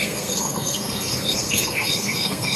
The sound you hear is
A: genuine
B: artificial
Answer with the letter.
B